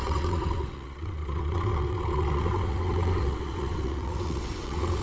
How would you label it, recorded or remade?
remade